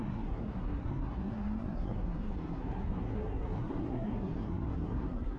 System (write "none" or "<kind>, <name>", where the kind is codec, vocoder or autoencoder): codec, SNAC